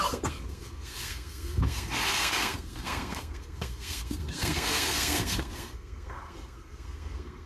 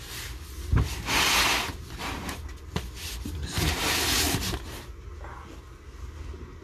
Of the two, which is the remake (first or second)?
first